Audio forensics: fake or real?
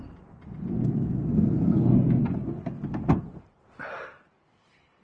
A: real